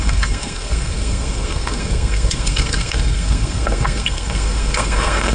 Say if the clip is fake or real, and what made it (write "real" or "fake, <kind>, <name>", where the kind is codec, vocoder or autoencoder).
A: fake, codec, SNAC